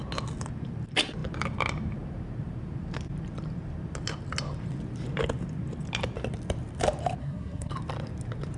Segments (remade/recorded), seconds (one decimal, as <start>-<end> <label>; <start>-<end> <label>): 0.0-7.2 recorded; 7.2-7.7 remade; 7.7-8.6 recorded